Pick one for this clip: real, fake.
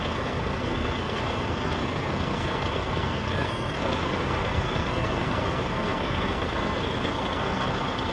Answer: fake